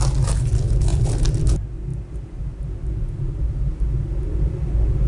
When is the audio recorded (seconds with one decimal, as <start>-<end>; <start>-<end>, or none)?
0.0-0.9; 1.4-5.1